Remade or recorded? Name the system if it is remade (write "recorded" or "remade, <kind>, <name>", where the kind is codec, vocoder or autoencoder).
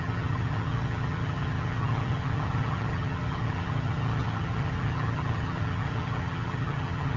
remade, vocoder, HiFi-GAN